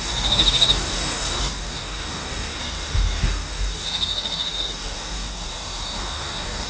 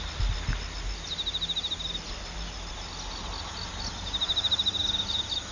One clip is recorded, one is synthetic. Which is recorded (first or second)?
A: second